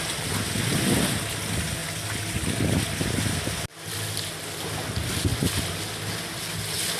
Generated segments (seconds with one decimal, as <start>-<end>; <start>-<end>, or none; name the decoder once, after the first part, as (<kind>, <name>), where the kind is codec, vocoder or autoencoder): 5.3-5.8 (vocoder, BigVGAN v2)